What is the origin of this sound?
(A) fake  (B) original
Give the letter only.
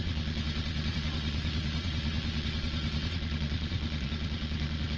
A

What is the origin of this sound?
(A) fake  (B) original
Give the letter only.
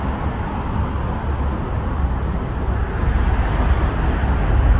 B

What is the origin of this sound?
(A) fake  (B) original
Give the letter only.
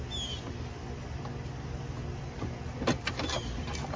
B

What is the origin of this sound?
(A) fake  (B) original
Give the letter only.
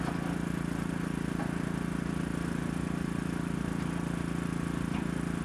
B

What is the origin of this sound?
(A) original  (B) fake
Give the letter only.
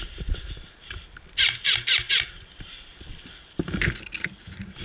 A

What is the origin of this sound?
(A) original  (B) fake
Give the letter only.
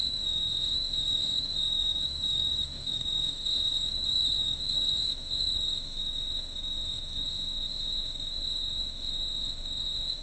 B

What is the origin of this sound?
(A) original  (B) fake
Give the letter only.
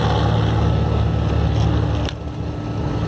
A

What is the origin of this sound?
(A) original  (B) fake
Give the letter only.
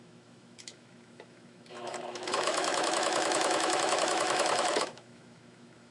B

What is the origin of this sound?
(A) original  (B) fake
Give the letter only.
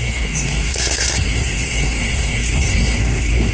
B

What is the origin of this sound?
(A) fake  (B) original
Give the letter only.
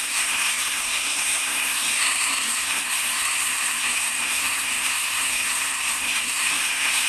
A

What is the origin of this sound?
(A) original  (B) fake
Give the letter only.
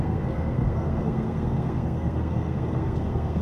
B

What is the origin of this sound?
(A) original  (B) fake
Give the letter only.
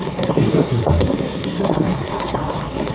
B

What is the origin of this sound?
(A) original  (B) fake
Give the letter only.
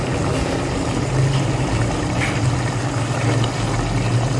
A